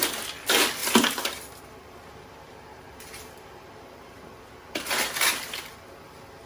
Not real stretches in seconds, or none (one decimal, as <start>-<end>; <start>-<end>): 0.8-4.4